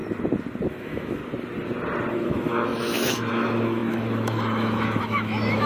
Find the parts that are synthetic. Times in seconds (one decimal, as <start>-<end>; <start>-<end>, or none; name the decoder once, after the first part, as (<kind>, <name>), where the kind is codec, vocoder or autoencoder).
0.7-1.2 (autoencoder, DAC-VAE); 2.1-5.7